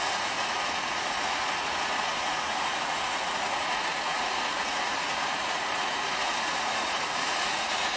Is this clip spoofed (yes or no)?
yes